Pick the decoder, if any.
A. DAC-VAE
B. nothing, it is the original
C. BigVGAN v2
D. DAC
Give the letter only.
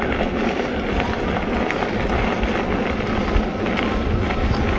B